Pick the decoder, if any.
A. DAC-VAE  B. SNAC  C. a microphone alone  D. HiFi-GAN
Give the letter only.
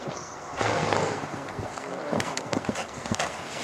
B